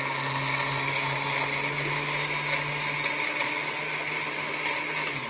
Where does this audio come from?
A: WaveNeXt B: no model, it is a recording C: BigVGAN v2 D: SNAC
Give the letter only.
B